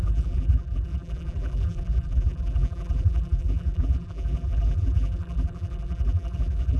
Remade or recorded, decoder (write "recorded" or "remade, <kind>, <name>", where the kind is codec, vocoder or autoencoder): remade, vocoder, BigVGAN v2